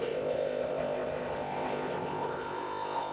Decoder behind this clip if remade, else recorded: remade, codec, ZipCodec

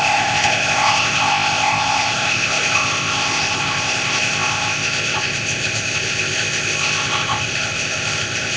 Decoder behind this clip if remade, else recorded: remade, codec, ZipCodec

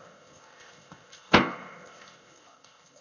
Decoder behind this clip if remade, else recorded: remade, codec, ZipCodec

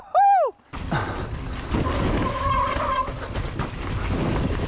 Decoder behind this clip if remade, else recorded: recorded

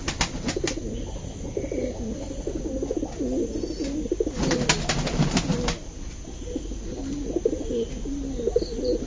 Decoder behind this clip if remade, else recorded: recorded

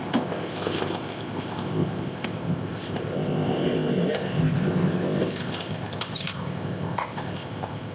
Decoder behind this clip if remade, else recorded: remade, codec, ZipCodec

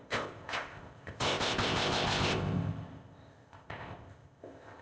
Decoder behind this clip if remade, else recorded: remade, codec, ZipCodec